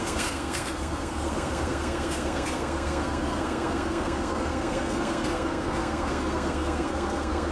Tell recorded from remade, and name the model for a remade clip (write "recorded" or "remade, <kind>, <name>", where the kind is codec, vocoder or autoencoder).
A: remade, codec, SNAC